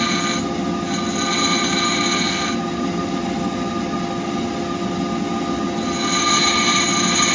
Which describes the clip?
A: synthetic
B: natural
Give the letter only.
B